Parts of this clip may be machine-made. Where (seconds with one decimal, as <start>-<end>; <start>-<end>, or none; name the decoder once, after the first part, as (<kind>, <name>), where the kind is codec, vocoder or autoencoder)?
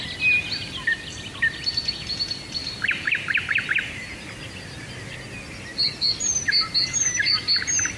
0.9-2.0 (vocoder, BigVGAN v2); 2.6-4.8; 5.7-6.4